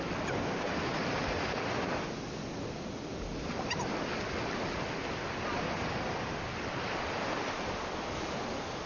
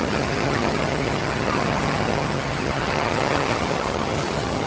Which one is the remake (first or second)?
second